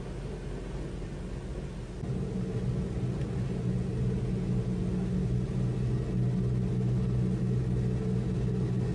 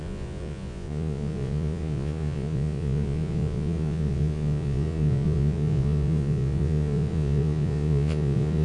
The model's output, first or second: second